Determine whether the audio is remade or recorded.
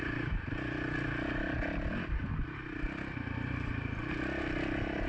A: recorded